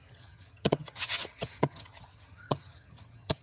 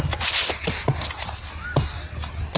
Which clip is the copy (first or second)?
first